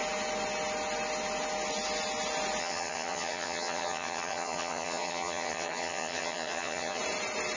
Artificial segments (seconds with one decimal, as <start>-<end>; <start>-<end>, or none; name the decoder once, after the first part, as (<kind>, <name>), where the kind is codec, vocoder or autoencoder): 2.6-7.0 (vocoder, HiFi-GAN)